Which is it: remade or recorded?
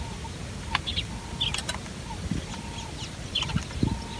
recorded